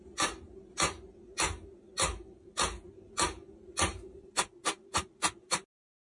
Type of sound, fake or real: real